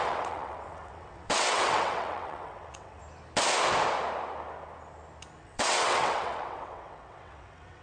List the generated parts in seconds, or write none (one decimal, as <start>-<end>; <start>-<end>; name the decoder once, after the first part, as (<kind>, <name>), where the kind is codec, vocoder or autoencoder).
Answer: 0.0-3.0 (vocoder, WaveNeXt); 5.4-7.8